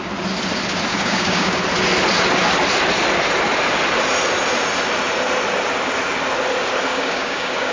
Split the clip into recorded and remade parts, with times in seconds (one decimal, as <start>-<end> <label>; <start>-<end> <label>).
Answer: 0.0-0.9 recorded; 0.9-1.6 remade; 1.6-6.9 recorded; 6.9-7.7 remade